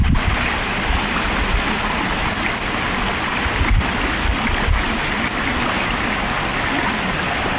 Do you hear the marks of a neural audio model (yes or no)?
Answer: no